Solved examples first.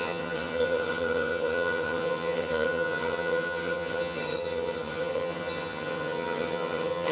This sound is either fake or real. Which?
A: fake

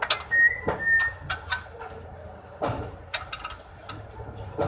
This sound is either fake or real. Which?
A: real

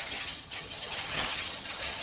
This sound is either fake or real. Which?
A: fake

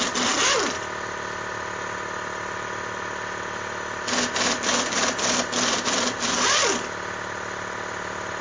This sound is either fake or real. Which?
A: real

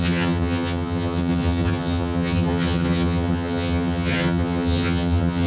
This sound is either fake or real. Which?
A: fake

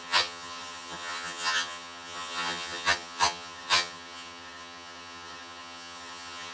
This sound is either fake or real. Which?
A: fake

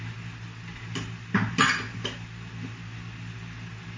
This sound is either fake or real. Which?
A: real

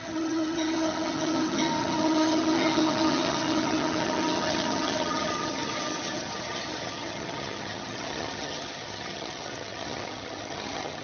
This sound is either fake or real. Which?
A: fake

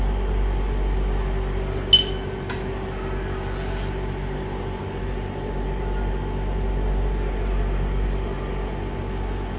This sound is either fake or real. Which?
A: real